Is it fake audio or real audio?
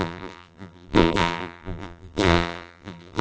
fake